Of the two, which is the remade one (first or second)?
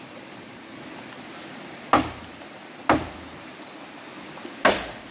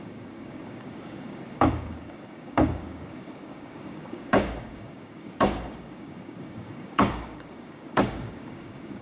second